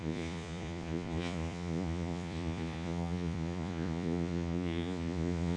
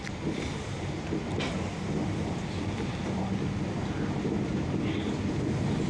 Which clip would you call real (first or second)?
second